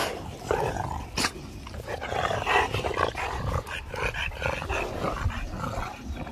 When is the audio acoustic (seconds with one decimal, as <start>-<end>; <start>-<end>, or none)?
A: 0.0-6.3